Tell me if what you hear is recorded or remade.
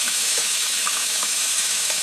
remade